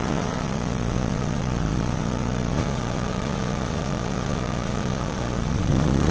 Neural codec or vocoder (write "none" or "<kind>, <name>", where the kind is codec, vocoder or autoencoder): vocoder, Vocos